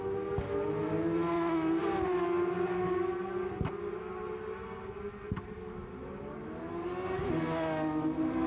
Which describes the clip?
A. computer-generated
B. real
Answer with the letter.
B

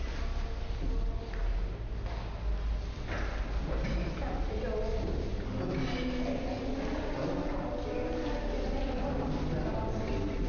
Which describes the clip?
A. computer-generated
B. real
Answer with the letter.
B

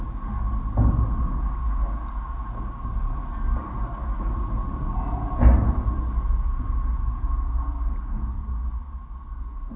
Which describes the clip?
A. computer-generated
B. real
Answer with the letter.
B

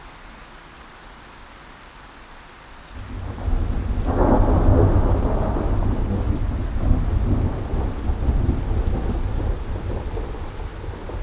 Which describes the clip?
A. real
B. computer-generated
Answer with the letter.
A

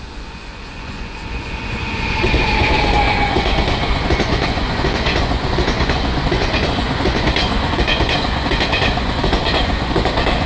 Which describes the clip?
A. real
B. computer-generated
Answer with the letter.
B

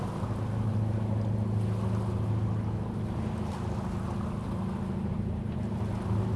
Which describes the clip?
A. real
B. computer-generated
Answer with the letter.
A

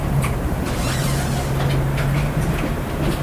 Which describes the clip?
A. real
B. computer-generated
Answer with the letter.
A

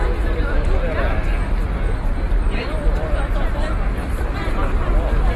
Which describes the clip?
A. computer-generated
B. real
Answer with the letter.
A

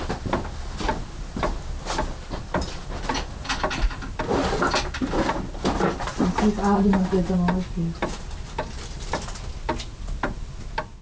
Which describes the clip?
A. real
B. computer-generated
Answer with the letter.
A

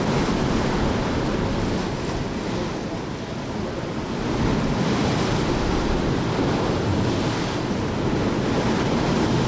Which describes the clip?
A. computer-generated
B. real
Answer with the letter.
B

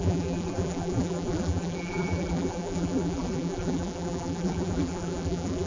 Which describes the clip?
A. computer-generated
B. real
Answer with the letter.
A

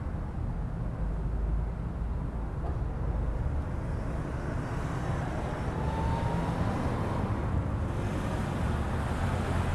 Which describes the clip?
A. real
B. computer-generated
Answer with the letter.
A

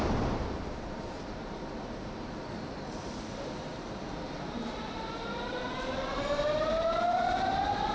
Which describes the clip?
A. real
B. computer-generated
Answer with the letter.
B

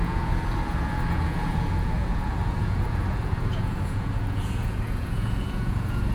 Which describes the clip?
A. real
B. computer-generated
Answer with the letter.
B